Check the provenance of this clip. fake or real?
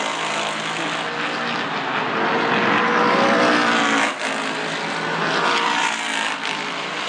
real